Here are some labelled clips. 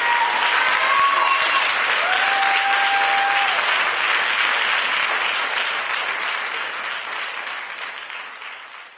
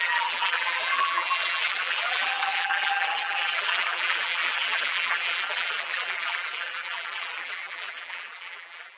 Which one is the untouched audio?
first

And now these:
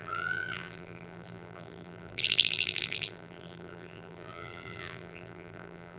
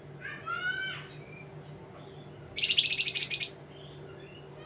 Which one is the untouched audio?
second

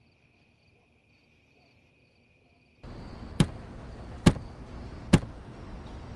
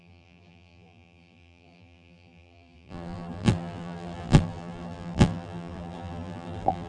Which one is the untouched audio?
first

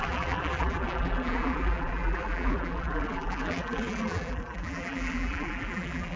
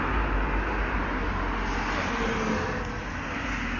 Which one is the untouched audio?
second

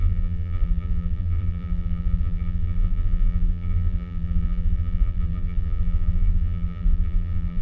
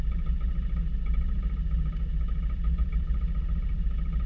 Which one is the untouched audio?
second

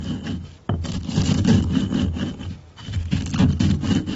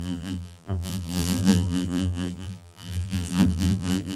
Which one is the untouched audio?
first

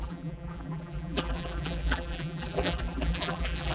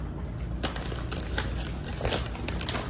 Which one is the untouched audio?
second